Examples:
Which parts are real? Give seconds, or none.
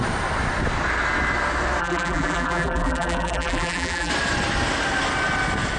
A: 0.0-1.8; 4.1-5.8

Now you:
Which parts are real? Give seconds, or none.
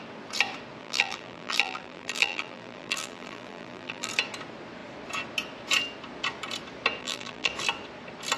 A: 0.0-0.8; 4.1-7.0; 7.5-8.4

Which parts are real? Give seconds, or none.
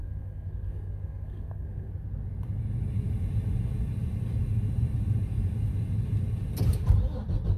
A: 1.9-7.6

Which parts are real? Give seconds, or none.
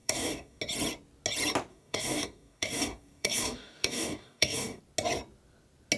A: 0.6-1.7; 4.8-6.0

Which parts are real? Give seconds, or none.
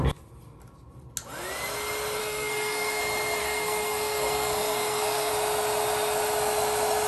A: 0.0-2.2; 3.0-3.4; 5.3-7.1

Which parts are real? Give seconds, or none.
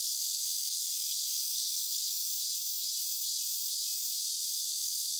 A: 2.3-4.5